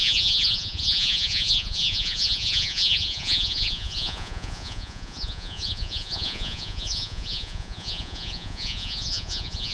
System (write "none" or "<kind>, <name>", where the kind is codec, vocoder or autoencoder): vocoder, Vocos